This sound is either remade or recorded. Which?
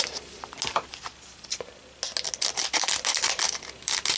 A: recorded